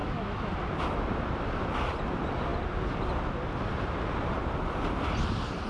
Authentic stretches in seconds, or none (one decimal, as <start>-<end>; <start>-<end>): 0.5-5.7